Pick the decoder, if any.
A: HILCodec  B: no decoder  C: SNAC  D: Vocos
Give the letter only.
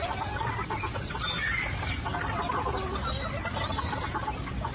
B